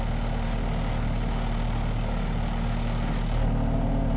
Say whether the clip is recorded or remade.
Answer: recorded